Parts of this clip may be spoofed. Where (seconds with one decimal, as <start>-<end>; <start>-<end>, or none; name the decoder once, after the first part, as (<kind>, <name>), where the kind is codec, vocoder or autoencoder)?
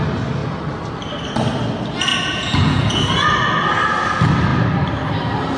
2.1-3.1 (vocoder, Vocos)